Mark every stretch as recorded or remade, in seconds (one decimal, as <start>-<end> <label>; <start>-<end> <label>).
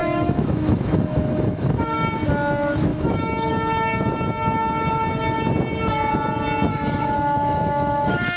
0.0-1.8 remade; 1.8-2.9 recorded; 2.9-3.5 remade; 3.5-6.7 recorded; 6.7-8.4 remade